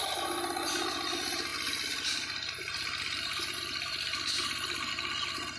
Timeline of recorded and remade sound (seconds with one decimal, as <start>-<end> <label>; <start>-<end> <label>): 0.0-1.5 recorded; 1.5-4.9 remade; 4.9-5.6 recorded